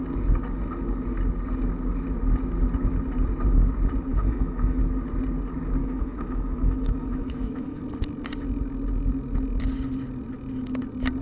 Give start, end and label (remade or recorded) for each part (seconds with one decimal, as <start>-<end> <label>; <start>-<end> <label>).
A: 0.0-4.1 recorded; 4.1-4.8 remade; 4.8-5.8 recorded; 5.8-7.8 remade; 7.8-11.2 recorded